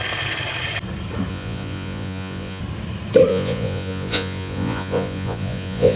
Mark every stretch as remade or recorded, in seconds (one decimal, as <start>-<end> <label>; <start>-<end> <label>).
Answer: 0.0-1.3 recorded; 1.3-2.6 remade; 2.6-3.3 recorded; 3.3-6.0 remade